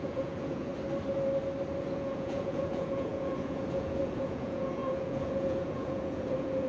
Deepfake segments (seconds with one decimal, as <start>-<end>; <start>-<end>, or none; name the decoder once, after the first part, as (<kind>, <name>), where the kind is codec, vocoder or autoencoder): 0.0-0.7 (vocoder, Vocos); 1.8-6.7

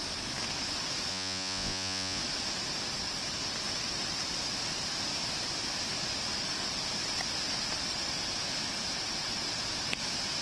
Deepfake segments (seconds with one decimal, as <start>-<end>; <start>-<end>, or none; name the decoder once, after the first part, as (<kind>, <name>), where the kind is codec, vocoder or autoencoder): 1.1-2.2 (vocoder, Vocos)

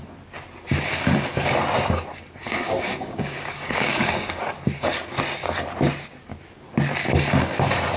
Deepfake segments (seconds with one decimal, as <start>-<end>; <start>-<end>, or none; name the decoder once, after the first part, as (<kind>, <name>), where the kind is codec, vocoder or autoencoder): 2.4-4.4 (codec, DAC)

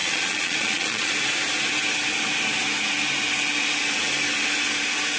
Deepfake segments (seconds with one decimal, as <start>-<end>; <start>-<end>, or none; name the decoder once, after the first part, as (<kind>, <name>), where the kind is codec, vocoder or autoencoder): 0.0-1.1 (vocoder, Vocos)